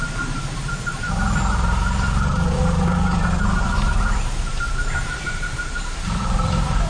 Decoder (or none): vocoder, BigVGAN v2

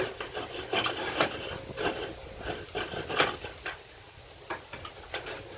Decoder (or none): none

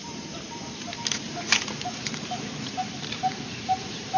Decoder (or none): vocoder, BigVGAN v2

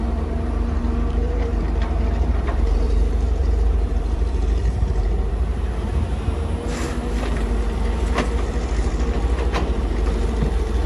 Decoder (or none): vocoder, BigVGAN v2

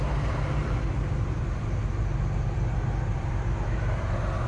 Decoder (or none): vocoder, BigVGAN v2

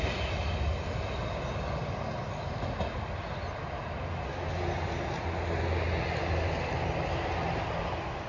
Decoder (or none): none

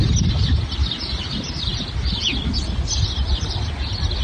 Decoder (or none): none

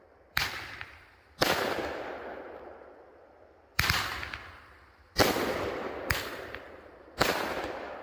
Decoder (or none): vocoder, BigVGAN v2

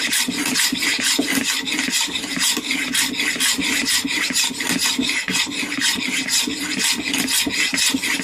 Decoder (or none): none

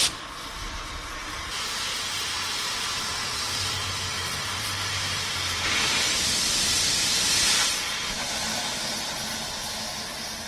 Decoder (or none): vocoder, BigVGAN v2